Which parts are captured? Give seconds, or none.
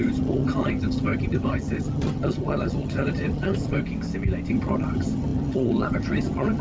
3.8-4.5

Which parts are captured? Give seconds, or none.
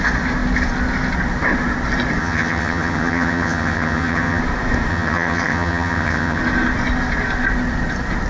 0.0-2.2; 4.4-4.9; 6.4-8.3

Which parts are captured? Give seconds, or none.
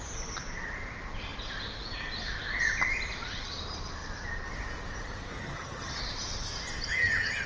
0.0-5.3; 6.0-6.9